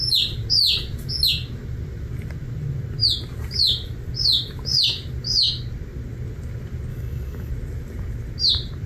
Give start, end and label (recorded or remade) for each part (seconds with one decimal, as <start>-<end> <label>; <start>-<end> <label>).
0.0-6.9 recorded; 6.9-7.5 remade; 7.5-8.9 recorded